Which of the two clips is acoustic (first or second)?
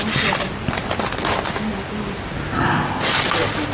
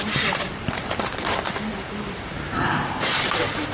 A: first